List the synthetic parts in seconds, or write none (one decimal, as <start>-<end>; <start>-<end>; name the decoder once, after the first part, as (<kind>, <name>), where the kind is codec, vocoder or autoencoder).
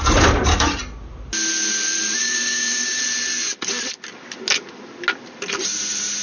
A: 2.2-3.0 (codec, DAC)